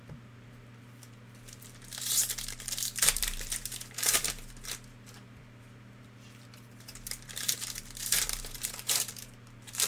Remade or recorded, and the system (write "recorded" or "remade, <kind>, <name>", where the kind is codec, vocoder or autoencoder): remade, vocoder, BigVGAN v2